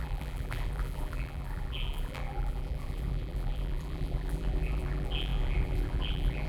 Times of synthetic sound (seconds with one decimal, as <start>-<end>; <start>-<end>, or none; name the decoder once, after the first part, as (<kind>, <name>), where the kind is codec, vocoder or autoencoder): 0.0-6.5 (vocoder, BigVGAN v2)